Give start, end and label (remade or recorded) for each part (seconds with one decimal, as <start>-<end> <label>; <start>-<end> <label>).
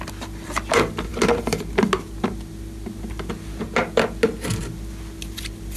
0.0-5.8 recorded